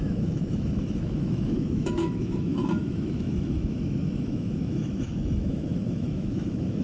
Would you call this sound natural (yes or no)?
no